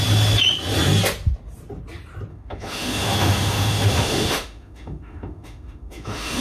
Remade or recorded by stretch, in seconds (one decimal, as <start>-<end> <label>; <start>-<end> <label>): 0.0-2.3 recorded; 2.3-6.4 remade